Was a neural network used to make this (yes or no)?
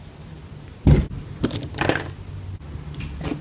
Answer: no